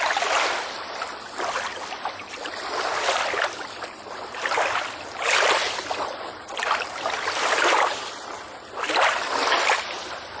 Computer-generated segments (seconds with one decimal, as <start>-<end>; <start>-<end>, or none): 0.0-10.4